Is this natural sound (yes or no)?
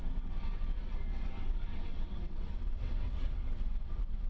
no